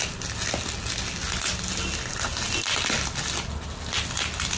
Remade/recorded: recorded